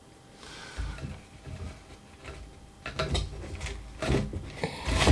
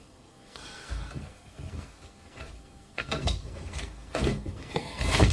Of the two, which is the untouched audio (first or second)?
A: first